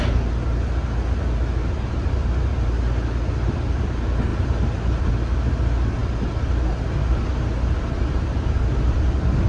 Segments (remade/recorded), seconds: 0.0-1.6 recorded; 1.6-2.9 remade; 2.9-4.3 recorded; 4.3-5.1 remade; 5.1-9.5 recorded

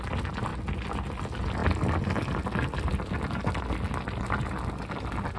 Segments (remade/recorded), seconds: 0.0-5.4 recorded

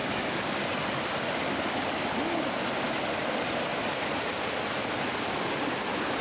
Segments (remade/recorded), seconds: 0.0-3.7 recorded; 3.7-4.5 remade; 4.5-6.2 recorded

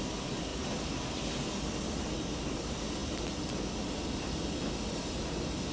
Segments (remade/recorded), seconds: 0.0-0.5 recorded; 0.5-1.8 remade; 1.8-5.7 recorded

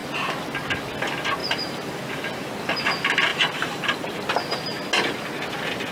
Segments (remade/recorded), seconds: 0.0-1.4 recorded; 1.4-2.0 remade; 2.0-3.3 recorded; 3.3-4.1 remade; 4.1-5.9 recorded